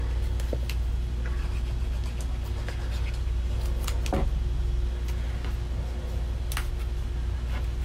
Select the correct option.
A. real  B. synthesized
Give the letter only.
A